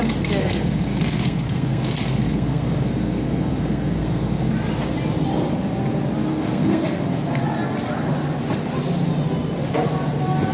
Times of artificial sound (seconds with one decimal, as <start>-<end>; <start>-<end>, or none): 0.4-4.5; 6.3-7.2